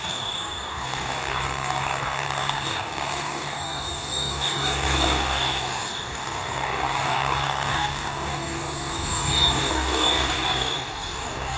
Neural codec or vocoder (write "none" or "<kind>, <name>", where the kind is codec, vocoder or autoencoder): codec, DAC